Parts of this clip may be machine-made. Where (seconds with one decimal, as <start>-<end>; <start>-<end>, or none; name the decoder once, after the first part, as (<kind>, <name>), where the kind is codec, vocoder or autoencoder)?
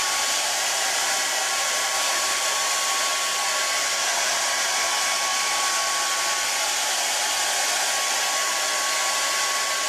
0.0-2.7 (vocoder, BigVGAN v2)